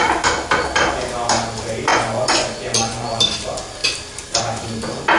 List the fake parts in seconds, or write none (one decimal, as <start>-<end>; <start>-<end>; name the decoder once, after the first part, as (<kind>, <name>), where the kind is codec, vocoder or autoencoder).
1.9-3.2 (vocoder, Vocos)

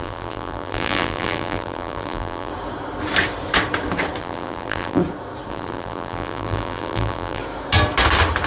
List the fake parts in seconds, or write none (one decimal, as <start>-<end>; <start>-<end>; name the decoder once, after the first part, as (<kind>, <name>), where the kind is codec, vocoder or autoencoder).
0.0-2.5 (vocoder, BigVGAN v2); 4.2-5.0; 5.5-7.4

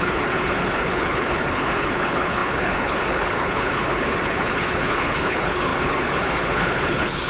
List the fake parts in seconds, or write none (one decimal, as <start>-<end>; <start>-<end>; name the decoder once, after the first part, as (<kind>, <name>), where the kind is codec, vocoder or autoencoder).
0.0-7.3 (codec, HILCodec)

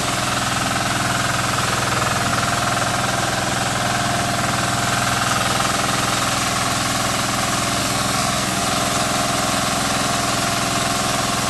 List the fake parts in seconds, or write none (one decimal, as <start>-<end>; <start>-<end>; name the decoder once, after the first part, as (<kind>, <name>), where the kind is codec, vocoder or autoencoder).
7.8-8.6 (codec, SNAC)

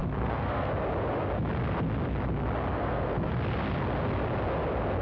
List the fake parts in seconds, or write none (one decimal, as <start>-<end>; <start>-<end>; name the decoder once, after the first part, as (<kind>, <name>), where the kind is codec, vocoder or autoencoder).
0.0-0.7 (codec, SNAC); 2.7-3.3

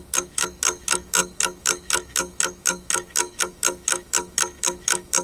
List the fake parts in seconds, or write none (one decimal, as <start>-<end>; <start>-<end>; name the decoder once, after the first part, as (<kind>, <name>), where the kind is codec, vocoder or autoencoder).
0.0-5.2 (autoencoder, DAC-VAE)

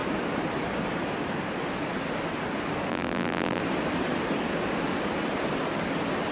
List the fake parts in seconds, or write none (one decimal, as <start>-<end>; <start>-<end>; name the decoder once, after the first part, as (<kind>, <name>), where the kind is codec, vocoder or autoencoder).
2.9-3.6 (vocoder, BigVGAN v2)